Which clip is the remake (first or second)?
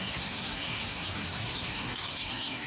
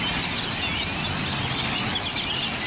first